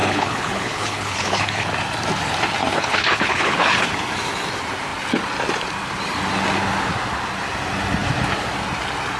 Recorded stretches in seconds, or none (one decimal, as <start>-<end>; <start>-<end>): 1.7-2.6; 3.9-9.2